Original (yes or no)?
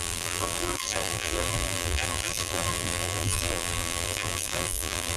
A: no